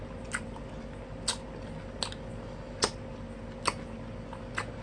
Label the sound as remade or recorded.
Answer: recorded